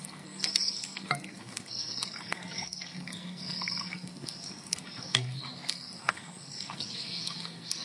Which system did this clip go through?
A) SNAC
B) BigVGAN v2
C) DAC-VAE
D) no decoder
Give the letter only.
A